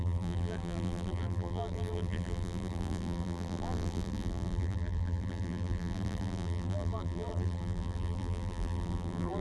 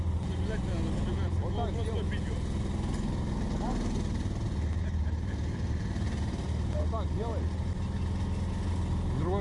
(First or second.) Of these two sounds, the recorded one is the second